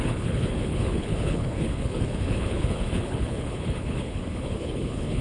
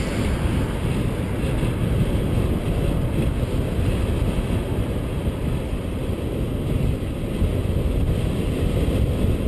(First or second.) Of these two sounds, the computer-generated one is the first